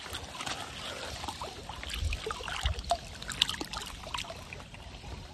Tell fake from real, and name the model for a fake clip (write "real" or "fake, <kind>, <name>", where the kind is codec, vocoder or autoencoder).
real